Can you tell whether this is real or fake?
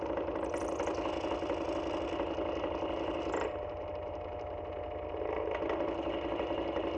real